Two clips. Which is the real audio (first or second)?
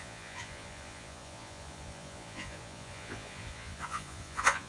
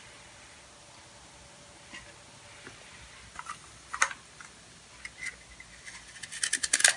second